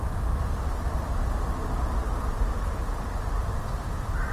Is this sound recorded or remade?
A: recorded